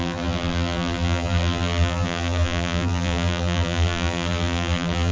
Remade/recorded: remade